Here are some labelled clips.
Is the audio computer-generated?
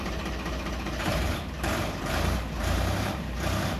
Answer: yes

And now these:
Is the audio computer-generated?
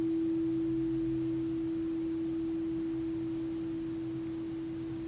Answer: no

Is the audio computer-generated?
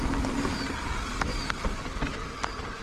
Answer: no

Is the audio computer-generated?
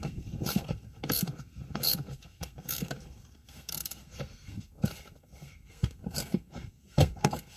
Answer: yes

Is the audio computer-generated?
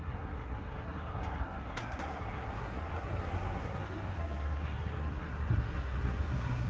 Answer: yes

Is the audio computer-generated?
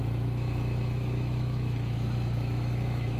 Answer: yes